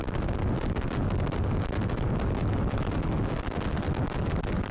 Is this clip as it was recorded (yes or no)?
yes